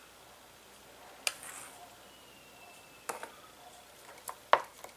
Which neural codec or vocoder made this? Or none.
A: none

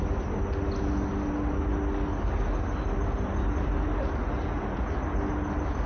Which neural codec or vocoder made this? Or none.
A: none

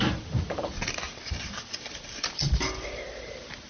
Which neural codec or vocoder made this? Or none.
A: none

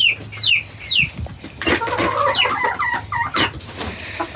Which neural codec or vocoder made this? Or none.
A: none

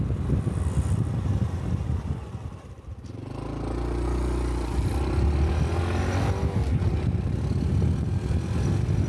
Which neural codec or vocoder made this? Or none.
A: none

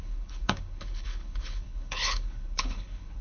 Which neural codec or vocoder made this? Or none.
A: codec, HILCodec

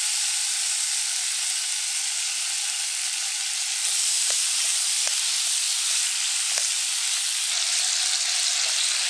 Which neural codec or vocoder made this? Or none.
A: none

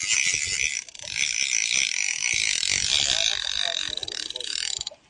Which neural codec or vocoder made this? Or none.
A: none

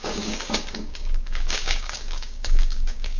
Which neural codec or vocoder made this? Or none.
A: codec, DAC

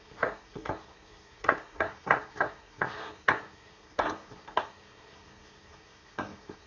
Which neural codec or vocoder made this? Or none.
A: codec, SNAC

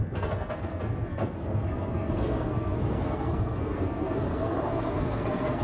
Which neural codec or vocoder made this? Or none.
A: codec, SNAC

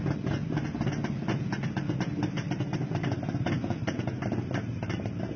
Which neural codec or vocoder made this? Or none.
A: none